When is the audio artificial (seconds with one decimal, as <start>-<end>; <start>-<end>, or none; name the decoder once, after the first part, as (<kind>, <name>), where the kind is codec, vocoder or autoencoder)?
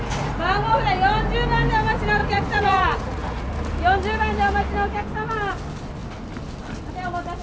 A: 2.2-3.5 (vocoder, Vocos)